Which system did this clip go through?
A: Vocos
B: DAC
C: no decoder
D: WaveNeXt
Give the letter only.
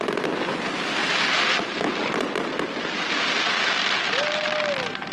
C